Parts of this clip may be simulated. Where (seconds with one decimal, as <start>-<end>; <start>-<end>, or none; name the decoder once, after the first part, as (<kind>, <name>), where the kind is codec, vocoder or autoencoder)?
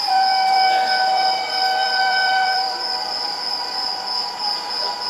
0.0-3.9 (vocoder, BigVGAN v2)